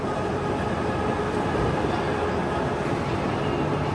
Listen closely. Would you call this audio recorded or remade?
recorded